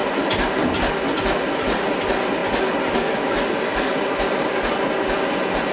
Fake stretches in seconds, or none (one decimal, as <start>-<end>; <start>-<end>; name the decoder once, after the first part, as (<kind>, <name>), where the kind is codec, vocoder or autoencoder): none